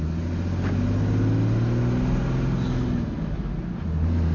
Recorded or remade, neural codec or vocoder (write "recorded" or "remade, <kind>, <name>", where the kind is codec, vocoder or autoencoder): recorded